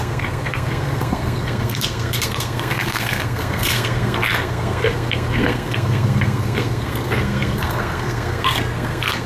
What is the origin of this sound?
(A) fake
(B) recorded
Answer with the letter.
A